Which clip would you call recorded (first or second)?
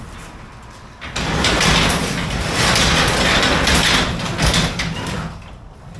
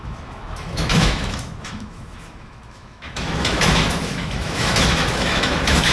first